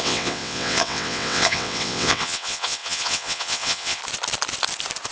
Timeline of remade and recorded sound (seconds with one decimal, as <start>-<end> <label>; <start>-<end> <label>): 0.0-4.0 remade; 4.0-5.1 recorded